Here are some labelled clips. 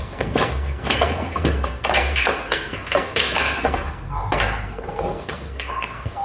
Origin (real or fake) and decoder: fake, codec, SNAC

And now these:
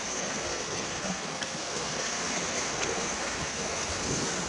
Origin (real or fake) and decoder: fake, codec, SNAC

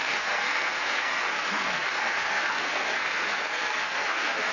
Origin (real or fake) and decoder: fake, codec, SNAC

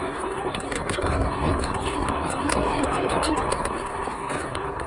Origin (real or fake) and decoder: fake, codec, SNAC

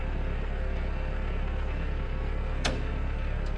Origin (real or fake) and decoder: fake, codec, SNAC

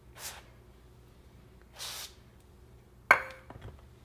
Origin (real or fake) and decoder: real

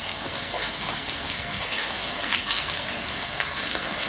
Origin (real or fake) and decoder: fake, codec, SNAC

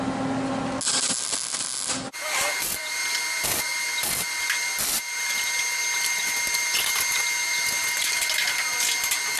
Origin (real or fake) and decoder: real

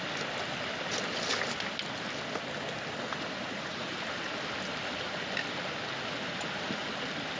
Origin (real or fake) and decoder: real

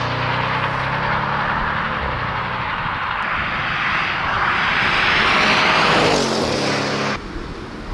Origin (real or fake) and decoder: real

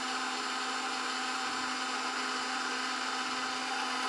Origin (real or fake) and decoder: real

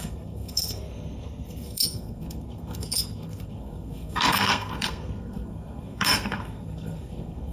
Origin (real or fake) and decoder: fake, codec, SNAC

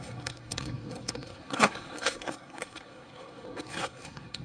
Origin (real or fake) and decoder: fake, codec, SNAC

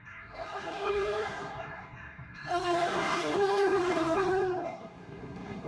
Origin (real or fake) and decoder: fake, codec, SNAC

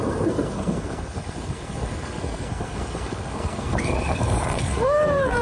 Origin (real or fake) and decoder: fake, codec, SNAC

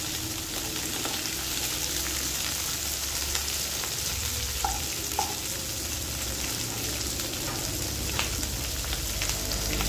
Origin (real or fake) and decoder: real